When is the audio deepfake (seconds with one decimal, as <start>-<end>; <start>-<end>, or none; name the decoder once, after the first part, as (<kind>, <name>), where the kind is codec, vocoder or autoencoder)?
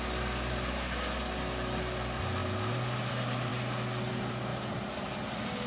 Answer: 4.5-5.1 (vocoder, BigVGAN v2)